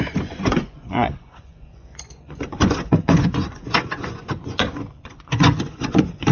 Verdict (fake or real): fake